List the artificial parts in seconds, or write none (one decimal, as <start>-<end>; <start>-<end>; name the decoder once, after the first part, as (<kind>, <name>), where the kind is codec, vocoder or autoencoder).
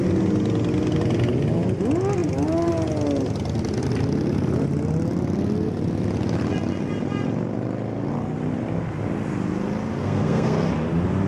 10.0-10.7 (codec, SNAC)